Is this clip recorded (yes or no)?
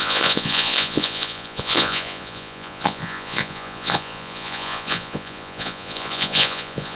no